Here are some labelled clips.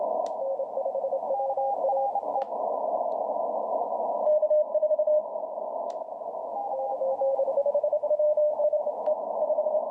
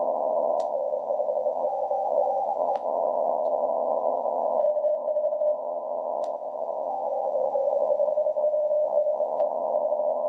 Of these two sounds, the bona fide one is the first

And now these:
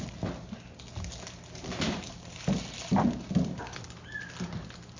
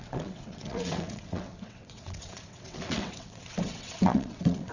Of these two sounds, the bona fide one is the first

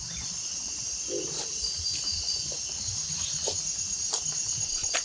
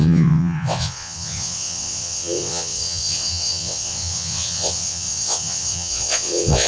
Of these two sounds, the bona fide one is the first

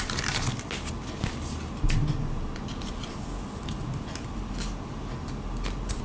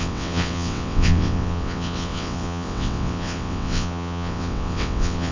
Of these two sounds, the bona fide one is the first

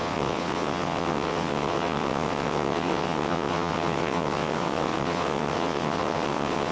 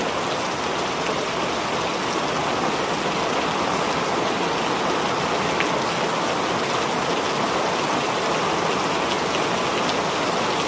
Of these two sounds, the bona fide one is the second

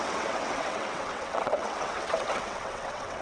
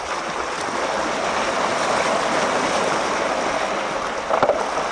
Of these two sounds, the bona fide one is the second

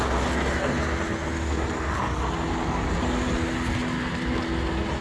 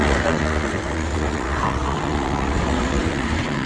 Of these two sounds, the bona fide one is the first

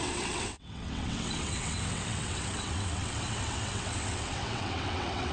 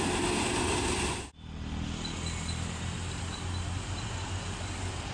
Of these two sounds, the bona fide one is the second